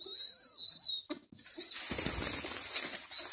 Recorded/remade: recorded